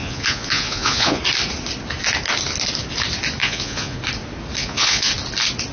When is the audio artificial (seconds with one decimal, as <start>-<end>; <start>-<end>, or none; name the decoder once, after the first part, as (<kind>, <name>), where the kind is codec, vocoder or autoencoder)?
0.0-1.2 (vocoder, Vocos); 3.4-4.0; 4.6-5.1